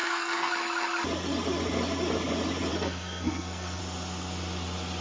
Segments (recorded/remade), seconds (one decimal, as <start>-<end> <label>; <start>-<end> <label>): 0.0-0.5 remade; 0.5-2.7 recorded; 2.7-3.8 remade; 3.8-5.0 recorded